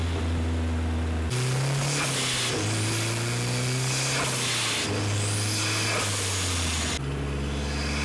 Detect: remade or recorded recorded